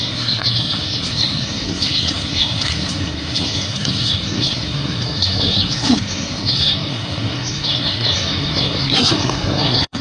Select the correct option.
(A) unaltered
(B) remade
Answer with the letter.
B